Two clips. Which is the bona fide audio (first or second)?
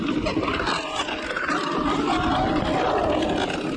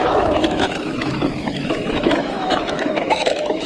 first